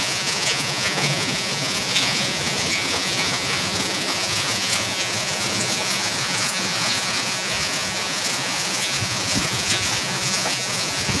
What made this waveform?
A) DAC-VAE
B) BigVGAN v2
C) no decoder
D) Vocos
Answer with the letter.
D